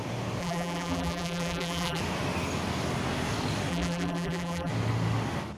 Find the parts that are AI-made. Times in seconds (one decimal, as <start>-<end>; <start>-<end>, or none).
0.4-2.0; 3.7-4.7